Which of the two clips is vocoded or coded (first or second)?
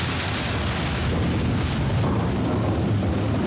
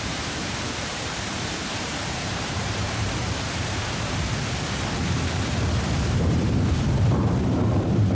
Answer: second